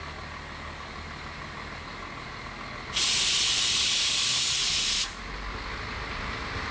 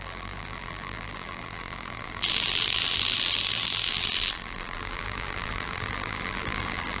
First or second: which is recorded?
first